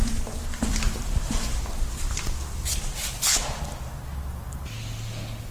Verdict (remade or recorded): recorded